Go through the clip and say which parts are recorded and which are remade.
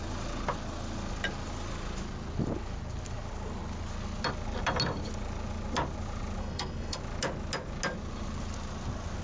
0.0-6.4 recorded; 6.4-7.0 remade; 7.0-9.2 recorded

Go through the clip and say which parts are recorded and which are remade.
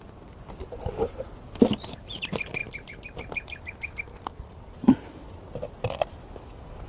0.0-6.9 recorded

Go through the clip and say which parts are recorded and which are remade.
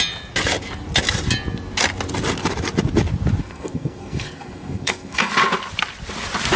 0.0-3.4 recorded; 3.4-5.3 remade; 5.3-6.6 recorded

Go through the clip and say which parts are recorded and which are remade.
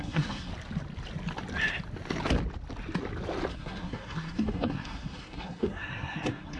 0.0-0.5 remade; 0.5-3.5 recorded; 3.5-6.6 remade